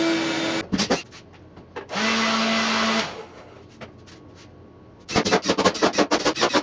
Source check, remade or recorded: recorded